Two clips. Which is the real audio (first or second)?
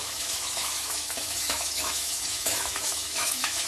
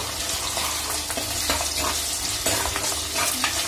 second